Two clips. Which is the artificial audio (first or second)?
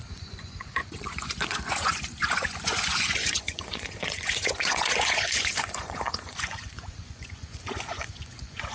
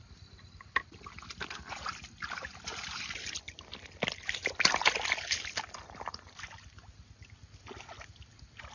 first